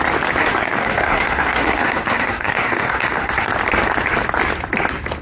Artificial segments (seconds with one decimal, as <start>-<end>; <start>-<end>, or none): 0.4-3.5